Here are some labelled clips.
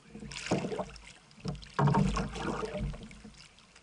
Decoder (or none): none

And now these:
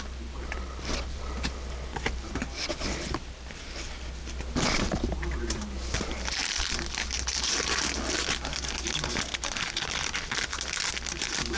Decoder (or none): none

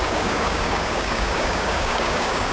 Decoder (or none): codec, DAC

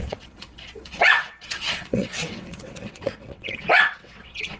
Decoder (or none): vocoder, WaveNeXt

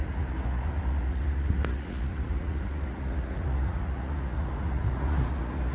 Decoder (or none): vocoder, Vocos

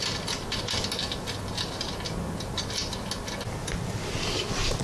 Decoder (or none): none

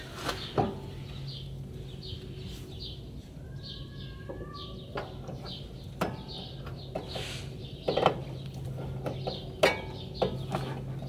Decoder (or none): none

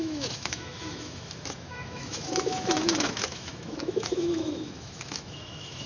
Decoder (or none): autoencoder, DAC-VAE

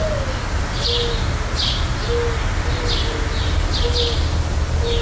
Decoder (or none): none